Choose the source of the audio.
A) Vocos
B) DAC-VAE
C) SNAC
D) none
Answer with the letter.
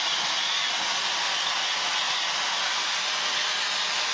D